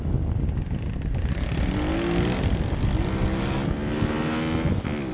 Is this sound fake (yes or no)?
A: no